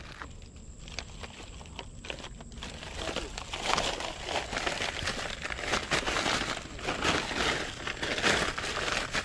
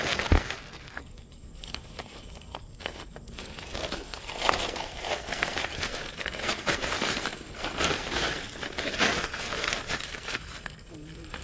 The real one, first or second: first